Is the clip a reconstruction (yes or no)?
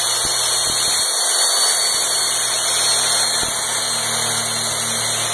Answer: no